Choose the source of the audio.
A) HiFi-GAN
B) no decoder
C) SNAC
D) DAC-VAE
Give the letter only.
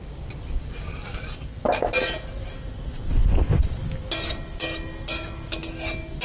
B